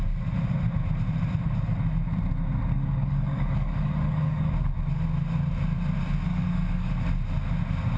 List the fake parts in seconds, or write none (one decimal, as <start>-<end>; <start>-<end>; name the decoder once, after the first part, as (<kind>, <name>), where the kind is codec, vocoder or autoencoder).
2.7-4.5 (codec, DAC); 6.3-6.9

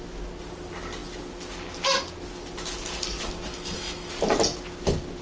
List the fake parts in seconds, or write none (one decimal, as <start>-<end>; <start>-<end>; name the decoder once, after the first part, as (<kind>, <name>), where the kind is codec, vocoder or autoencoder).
3.5-4.1 (autoencoder, DAC-VAE)

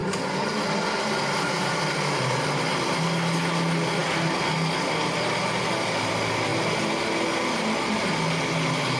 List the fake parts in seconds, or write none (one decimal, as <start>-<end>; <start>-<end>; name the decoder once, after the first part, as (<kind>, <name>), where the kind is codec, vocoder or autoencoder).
none

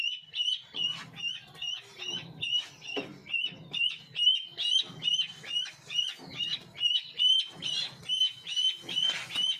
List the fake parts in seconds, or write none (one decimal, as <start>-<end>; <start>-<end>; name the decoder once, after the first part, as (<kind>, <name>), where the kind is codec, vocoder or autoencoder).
none

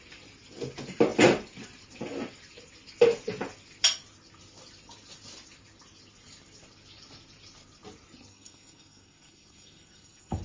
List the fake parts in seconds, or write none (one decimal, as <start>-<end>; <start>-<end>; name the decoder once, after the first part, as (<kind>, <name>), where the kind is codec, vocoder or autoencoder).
8.3-10.4 (codec, SNAC)

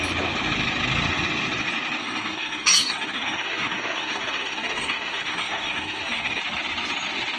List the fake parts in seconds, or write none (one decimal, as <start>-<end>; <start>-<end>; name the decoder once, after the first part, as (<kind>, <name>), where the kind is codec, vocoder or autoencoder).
2.0-6.4 (codec, SNAC)